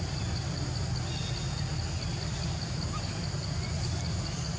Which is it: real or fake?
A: real